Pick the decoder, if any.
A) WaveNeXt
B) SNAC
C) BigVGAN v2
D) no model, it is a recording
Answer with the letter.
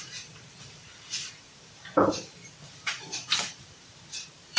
C